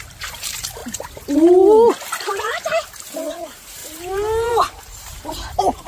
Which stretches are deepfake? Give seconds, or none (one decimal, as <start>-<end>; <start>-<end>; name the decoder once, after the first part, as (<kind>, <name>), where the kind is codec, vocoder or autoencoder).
0.0-0.8 (vocoder, BigVGAN v2); 2.3-5.9